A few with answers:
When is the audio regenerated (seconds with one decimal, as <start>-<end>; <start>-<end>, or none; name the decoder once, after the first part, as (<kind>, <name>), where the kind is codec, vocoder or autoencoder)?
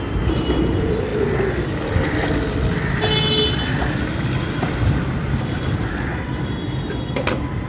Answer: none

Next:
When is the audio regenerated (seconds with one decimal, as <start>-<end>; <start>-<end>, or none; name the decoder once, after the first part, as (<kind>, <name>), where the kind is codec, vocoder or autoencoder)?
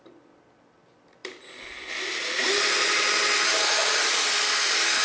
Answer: 1.2-2.5 (vocoder, BigVGAN v2); 3.8-5.0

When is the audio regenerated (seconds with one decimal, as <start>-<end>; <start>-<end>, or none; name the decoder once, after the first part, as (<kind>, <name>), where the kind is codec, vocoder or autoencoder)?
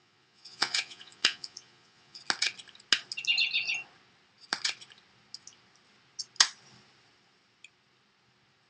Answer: 0.0-2.2 (vocoder, Vocos)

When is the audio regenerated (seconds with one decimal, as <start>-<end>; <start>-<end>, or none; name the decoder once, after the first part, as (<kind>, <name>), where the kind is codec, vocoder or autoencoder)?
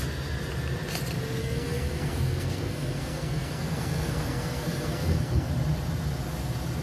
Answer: 1.4-5.5 (codec, SNAC)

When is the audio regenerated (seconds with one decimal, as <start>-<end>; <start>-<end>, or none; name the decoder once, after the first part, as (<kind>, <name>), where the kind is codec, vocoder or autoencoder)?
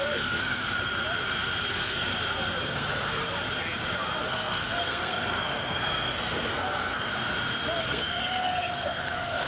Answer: 0.0-0.6 (codec, SNAC); 1.7-2.1; 2.6-3.2; 4.3-7.1; 7.8-9.5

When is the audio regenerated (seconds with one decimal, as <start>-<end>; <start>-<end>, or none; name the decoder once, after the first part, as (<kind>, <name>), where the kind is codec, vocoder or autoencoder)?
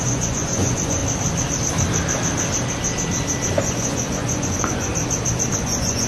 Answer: 0.0-1.0 (vocoder, Vocos); 3.6-4.9; 5.5-6.1